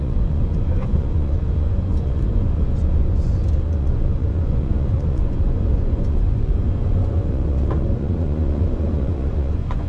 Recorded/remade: remade